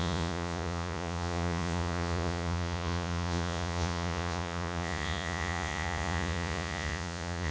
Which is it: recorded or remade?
remade